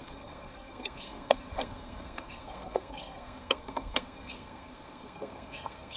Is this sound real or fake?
fake